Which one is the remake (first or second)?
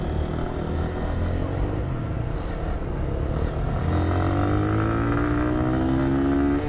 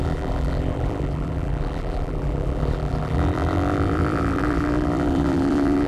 second